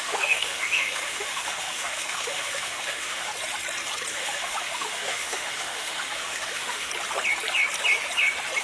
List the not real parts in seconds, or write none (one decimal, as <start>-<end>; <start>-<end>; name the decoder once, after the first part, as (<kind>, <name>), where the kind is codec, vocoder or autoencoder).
0.0-3.3 (autoencoder, DAC-VAE); 4.1-6.9